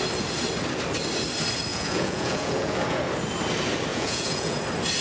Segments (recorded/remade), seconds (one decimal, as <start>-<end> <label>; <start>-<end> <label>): 0.0-1.7 recorded; 1.7-3.0 remade; 3.0-3.9 recorded; 3.9-4.6 remade; 4.6-5.0 recorded